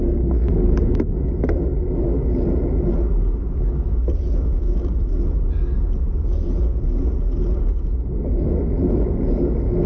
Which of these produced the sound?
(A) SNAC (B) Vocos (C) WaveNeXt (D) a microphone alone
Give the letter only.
D